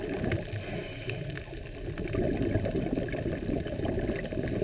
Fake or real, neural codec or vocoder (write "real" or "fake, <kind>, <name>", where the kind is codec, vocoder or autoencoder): real